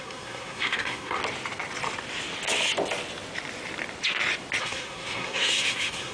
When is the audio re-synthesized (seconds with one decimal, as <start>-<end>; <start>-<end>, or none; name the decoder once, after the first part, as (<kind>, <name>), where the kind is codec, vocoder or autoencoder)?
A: 0.0-1.2 (codec, SNAC); 4.6-6.1